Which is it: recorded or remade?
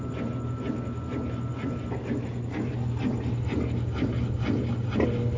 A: recorded